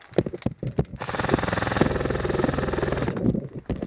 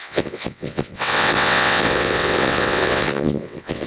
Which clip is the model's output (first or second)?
second